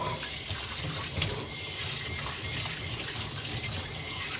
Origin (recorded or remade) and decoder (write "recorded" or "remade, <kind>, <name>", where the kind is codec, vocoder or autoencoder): recorded